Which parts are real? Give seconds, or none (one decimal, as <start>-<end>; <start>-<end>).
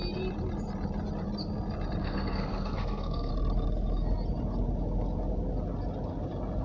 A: 0.0-2.0; 3.3-6.6